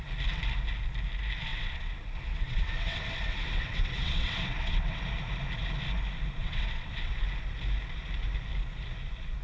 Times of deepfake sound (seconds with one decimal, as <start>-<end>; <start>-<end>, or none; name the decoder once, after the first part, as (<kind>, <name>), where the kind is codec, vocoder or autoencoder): 1.5-5.0 (vocoder, WaveNeXt); 6.4-7.2